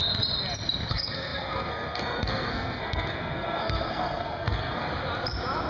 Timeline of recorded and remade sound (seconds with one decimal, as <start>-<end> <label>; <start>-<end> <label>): 0.0-0.9 recorded; 0.9-4.9 remade; 4.9-5.7 recorded